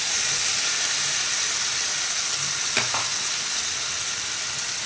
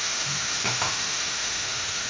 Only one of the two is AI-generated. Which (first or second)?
second